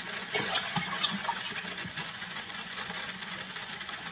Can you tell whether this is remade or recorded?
remade